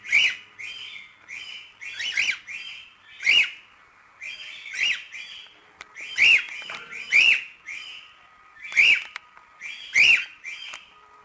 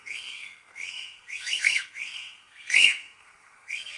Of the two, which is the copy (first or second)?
second